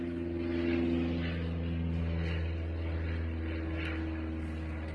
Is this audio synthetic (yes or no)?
no